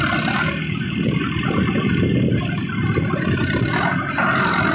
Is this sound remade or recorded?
recorded